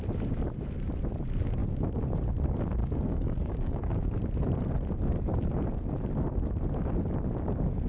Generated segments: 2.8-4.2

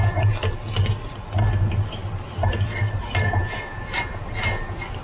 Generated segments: none

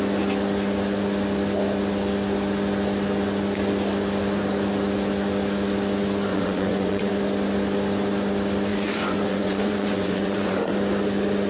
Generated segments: 6.3-7.1; 8.7-10.7